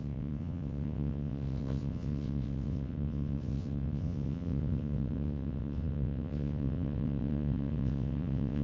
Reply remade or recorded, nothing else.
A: remade